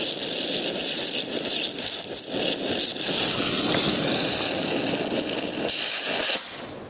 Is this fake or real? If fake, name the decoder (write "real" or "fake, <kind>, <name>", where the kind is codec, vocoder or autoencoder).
real